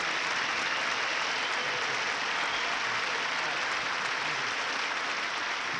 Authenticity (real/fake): real